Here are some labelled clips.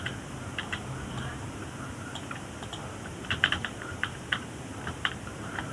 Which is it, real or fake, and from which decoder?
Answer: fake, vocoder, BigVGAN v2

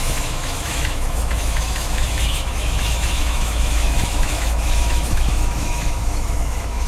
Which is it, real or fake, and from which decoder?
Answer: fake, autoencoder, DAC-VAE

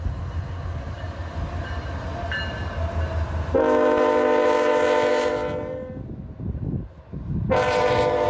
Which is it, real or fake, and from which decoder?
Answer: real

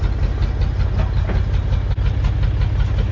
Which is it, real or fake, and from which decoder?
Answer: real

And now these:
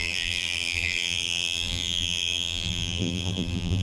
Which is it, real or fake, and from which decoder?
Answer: fake, vocoder, BigVGAN v2